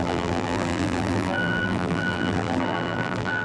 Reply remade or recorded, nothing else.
remade